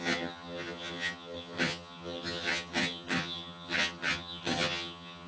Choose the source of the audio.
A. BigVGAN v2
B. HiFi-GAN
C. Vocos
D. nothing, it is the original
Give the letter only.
B